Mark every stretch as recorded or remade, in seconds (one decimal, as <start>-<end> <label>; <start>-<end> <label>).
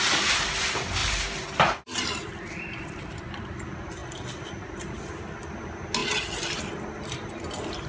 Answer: 0.0-1.0 recorded; 1.0-3.5 remade; 3.5-7.9 recorded